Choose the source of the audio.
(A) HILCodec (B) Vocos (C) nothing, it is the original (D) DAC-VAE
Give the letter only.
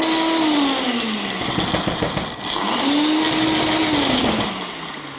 C